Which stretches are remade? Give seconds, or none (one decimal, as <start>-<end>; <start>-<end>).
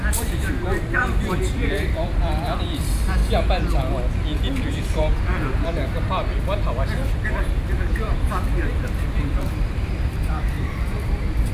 0.0-3.2; 7.9-11.5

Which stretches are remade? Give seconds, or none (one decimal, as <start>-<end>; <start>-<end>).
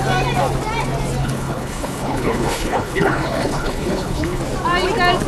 1.2-4.4